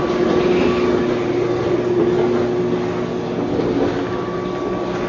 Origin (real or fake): real